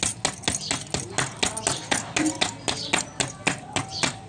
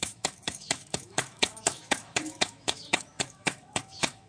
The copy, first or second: second